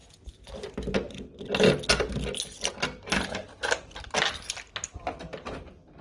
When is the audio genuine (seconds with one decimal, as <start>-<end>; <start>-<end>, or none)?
0.0-6.0